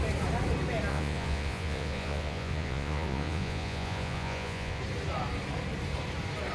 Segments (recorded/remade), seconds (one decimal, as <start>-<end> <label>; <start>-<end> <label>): 0.0-0.9 recorded; 0.9-4.8 remade; 4.8-6.5 recorded

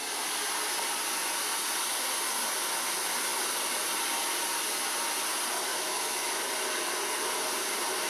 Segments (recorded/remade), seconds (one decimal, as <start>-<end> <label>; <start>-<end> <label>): 0.0-5.7 recorded; 5.7-6.4 remade; 6.4-8.1 recorded